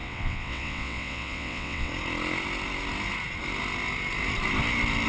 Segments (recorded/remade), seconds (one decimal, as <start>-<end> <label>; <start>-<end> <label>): 0.0-1.9 remade; 1.9-5.1 recorded